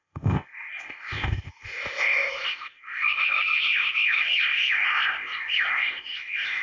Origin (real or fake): fake